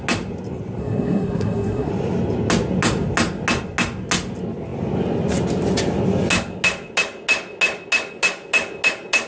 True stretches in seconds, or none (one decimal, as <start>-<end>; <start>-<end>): 0.0-0.8; 1.9-9.3